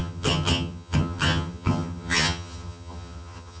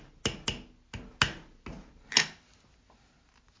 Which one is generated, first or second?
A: first